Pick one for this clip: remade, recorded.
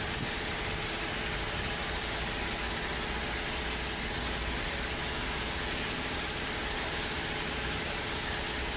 recorded